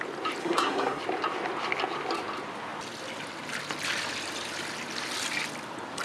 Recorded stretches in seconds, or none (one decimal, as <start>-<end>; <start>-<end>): 0.0-0.4; 1.0-6.0